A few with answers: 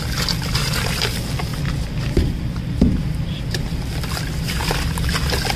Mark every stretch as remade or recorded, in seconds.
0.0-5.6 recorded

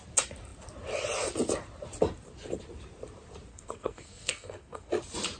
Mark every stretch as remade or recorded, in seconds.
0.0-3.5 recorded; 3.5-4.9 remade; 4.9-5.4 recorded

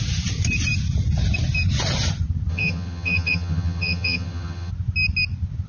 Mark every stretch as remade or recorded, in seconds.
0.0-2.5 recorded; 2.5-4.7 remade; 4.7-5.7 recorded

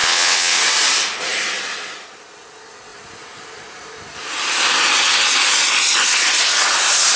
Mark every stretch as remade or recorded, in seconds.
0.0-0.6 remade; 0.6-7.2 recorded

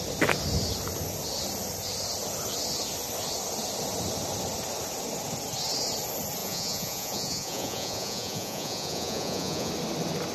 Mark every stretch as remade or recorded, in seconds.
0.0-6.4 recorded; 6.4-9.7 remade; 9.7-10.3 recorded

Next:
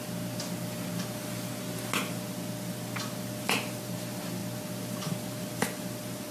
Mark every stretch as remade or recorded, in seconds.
0.0-6.3 recorded

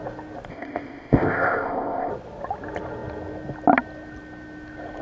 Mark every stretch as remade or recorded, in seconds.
0.0-0.5 recorded; 0.5-2.1 remade; 2.1-5.0 recorded

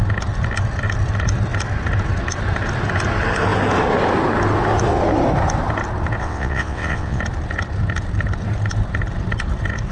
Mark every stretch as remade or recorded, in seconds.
0.0-6.2 recorded; 6.2-7.2 remade; 7.2-9.9 recorded